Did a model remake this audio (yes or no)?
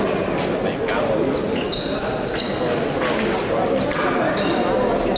no